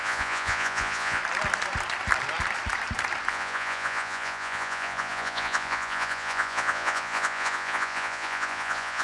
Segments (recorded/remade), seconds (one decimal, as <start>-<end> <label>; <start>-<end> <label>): 0.0-1.2 remade; 1.2-3.3 recorded; 3.3-9.0 remade